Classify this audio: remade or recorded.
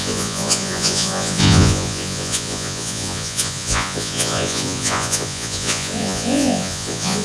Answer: remade